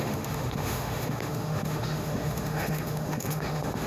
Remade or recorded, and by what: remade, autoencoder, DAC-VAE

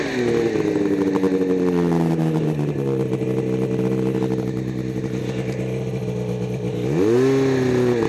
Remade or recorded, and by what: recorded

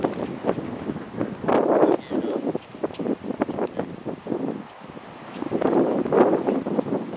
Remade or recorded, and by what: recorded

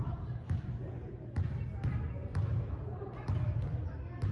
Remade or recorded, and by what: recorded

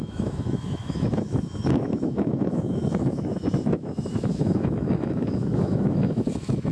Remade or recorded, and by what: remade, autoencoder, DAC-VAE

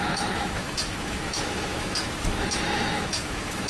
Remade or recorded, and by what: remade, autoencoder, DAC-VAE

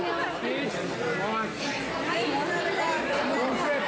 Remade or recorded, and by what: recorded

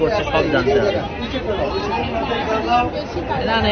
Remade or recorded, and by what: recorded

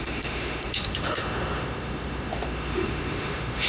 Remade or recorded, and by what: remade, autoencoder, DAC-VAE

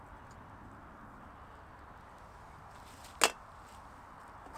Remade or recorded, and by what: recorded